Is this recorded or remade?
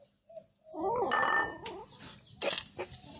recorded